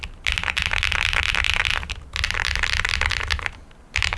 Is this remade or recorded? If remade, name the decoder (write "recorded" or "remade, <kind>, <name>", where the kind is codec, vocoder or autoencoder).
recorded